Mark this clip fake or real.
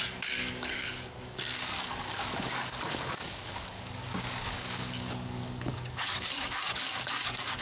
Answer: fake